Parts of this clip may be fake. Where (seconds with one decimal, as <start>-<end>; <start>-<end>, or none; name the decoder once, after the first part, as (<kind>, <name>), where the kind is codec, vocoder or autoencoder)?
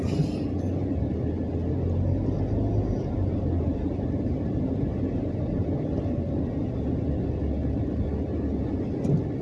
2.7-5.4 (vocoder, BigVGAN v2)